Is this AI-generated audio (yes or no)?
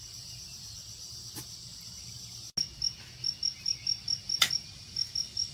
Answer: no